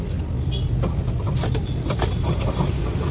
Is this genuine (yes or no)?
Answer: yes